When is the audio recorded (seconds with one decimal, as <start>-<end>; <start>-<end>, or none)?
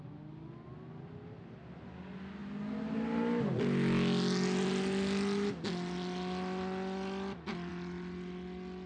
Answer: 0.0-8.9